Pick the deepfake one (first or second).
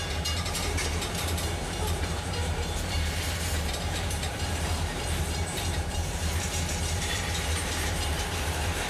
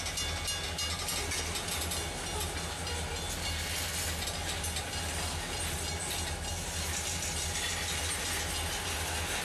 first